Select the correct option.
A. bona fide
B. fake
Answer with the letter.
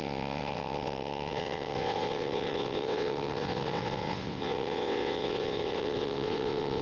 B